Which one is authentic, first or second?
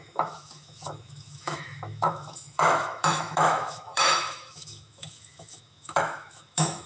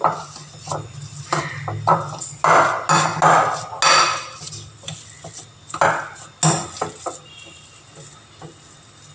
second